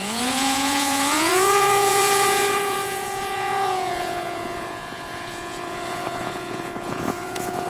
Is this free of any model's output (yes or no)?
no